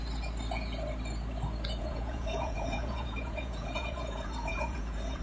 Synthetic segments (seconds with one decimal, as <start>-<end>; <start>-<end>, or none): 1.8-5.2